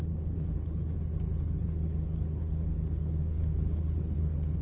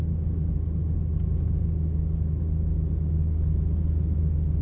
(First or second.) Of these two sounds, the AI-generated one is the first